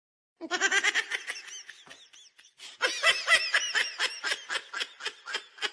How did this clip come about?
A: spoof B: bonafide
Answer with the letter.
B